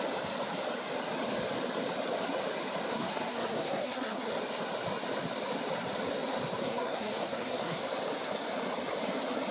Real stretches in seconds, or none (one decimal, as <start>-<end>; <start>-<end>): 0.0-2.9; 4.3-6.6; 7.8-9.5

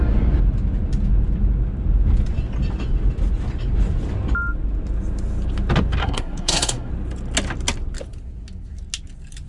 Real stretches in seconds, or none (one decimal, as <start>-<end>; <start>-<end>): 0.0-6.0; 6.9-9.5